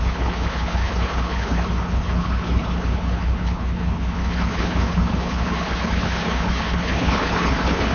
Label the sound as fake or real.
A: fake